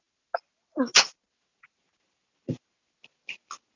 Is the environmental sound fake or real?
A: real